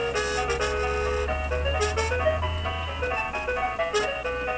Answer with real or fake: real